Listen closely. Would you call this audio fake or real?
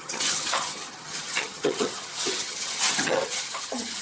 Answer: fake